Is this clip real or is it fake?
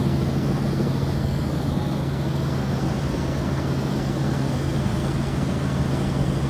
fake